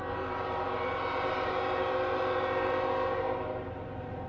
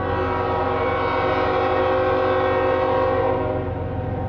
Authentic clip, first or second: second